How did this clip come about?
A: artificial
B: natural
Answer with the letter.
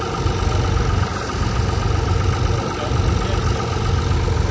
B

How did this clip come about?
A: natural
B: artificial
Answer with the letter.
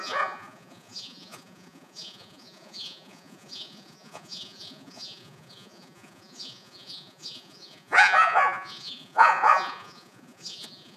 B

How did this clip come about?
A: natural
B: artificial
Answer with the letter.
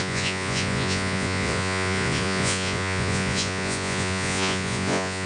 B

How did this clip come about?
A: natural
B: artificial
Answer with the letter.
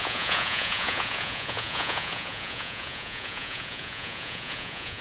B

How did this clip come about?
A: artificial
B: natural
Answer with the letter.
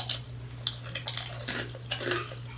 B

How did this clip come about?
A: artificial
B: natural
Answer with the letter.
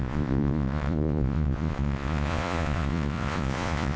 A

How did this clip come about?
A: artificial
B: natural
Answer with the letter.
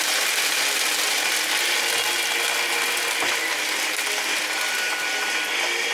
B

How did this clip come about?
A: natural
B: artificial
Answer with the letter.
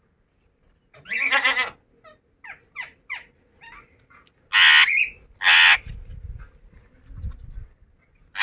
A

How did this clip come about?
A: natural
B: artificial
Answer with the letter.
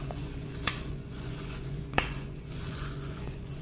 B